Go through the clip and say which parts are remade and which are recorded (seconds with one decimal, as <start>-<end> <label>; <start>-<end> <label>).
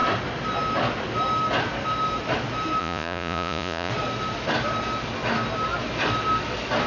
0.0-2.8 recorded; 2.8-3.9 remade; 3.9-6.9 recorded